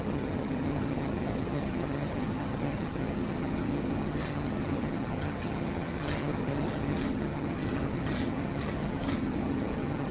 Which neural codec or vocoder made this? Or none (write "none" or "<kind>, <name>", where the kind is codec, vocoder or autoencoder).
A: vocoder, HiFi-GAN